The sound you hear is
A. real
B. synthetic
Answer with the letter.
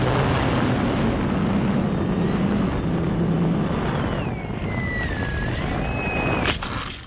A